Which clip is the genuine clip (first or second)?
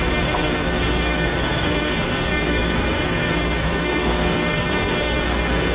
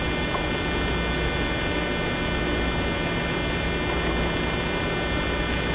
second